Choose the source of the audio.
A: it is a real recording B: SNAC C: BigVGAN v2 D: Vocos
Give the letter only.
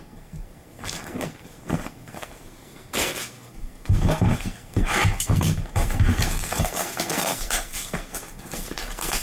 B